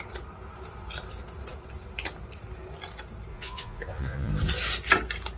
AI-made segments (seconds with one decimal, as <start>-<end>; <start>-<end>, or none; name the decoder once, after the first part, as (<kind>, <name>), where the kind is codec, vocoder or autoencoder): 3.3-4.3 (vocoder, Vocos)